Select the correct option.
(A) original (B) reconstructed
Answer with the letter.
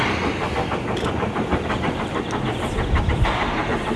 A